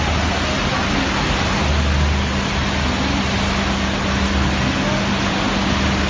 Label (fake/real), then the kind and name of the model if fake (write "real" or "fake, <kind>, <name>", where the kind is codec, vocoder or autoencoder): real